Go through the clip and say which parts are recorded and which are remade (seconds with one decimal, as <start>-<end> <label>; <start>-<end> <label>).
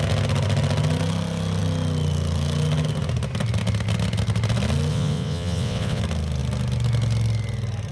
0.0-4.9 recorded; 4.9-6.0 remade; 6.0-7.9 recorded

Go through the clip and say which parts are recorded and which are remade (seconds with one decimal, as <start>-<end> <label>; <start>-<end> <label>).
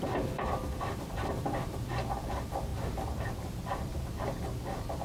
0.0-2.7 remade; 2.7-3.3 recorded; 3.3-3.9 remade; 3.9-4.6 recorded; 4.6-5.0 remade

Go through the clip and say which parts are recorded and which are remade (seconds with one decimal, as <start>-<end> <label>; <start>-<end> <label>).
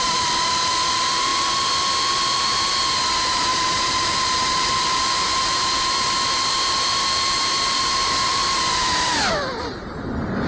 0.0-10.5 remade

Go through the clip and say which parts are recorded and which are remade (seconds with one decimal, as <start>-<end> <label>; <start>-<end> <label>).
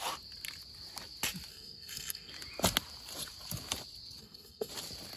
0.0-1.5 recorded; 1.5-2.3 remade; 2.3-4.2 recorded; 4.2-4.7 remade; 4.7-5.2 recorded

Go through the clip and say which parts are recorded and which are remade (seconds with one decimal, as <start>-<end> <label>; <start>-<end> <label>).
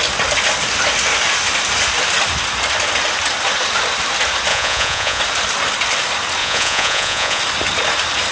0.0-4.5 recorded; 4.5-5.2 remade; 5.2-6.4 recorded; 6.4-7.4 remade; 7.4-8.3 recorded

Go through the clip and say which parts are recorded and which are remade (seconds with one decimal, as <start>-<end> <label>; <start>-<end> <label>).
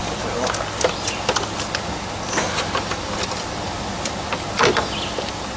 0.0-5.6 recorded